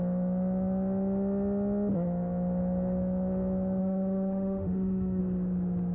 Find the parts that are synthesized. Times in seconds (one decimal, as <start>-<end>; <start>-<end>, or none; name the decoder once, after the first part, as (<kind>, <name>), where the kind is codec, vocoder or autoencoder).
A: 3.8-5.2 (autoencoder, DAC-VAE)